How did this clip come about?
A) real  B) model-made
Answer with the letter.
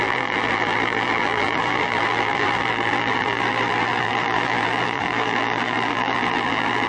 B